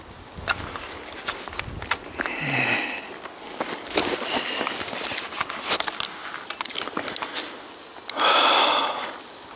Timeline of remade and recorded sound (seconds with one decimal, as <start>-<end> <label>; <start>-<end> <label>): 0.0-9.6 recorded